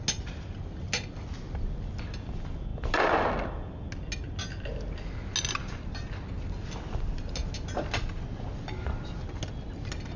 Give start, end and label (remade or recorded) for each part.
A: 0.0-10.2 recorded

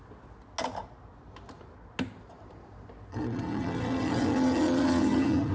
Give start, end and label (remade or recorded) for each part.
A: 0.0-3.1 recorded; 3.1-5.5 remade